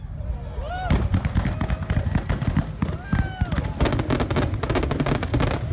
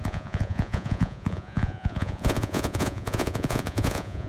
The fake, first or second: second